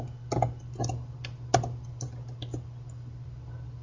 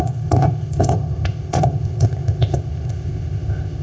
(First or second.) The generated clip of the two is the second